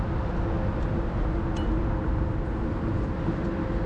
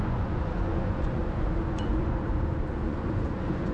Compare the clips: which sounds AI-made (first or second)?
second